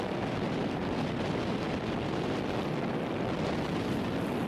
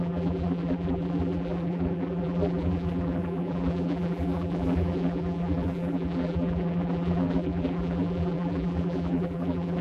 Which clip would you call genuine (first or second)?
first